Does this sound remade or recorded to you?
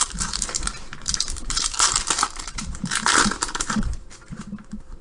remade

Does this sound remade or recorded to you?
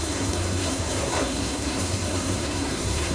remade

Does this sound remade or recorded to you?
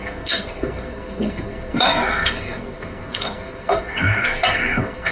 remade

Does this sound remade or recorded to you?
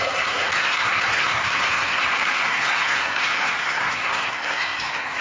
remade